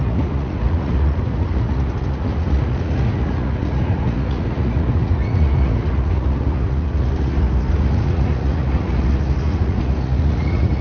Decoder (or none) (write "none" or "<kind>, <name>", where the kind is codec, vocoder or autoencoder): vocoder, Vocos